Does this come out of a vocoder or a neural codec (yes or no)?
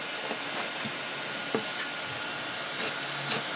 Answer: no